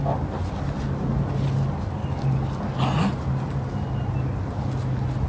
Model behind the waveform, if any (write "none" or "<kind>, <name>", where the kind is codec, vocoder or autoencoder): none